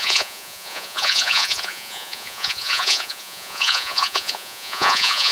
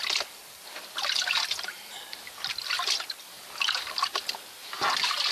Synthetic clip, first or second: first